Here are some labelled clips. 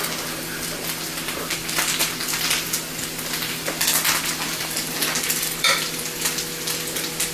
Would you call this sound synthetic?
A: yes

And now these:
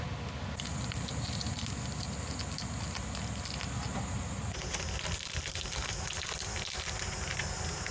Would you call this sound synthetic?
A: no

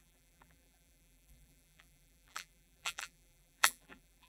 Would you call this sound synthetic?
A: yes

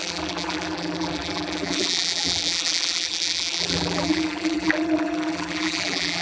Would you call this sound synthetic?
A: yes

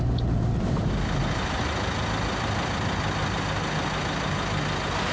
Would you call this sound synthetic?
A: no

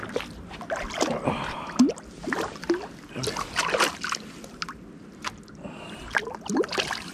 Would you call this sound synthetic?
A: no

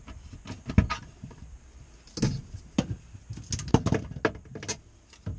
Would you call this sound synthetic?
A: no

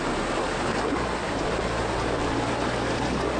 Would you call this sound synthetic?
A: no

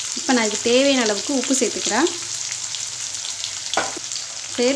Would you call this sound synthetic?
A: no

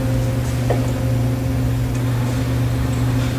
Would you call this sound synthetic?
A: no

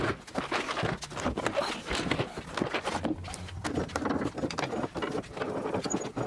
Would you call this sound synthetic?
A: no